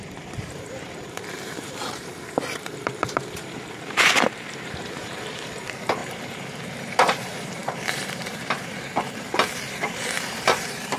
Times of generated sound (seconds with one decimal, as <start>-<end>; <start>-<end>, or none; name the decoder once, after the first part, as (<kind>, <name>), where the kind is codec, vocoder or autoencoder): 0.0-11.0 (vocoder, BigVGAN v2)